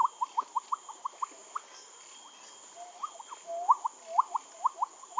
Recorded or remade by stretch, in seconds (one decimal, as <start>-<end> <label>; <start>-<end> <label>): 0.0-0.9 remade; 0.9-5.2 recorded

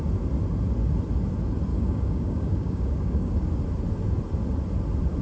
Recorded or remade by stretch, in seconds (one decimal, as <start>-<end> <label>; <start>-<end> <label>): 0.0-1.7 recorded; 1.7-3.3 remade; 3.3-5.2 recorded

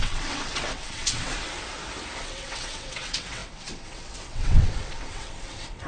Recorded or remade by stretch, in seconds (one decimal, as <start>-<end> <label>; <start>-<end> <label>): 0.0-1.3 remade; 1.3-2.2 recorded; 2.2-5.9 remade

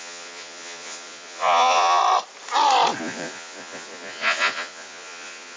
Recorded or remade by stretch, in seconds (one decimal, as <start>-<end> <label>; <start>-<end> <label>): 0.0-2.0 remade; 2.0-3.0 recorded; 3.0-5.6 remade

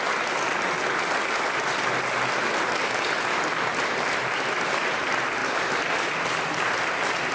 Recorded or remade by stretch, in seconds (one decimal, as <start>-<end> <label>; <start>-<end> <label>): 0.0-7.3 recorded

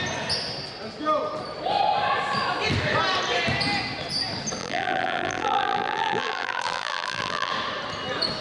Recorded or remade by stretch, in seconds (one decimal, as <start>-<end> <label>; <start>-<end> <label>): 0.0-4.6 recorded; 4.6-7.5 remade; 7.5-8.4 recorded

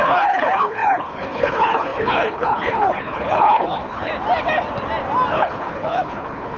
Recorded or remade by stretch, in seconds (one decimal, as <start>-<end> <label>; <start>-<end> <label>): 0.0-4.1 remade; 4.1-5.3 recorded; 5.3-6.6 remade